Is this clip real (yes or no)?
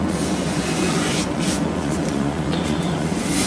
no